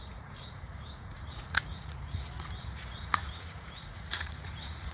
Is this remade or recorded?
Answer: remade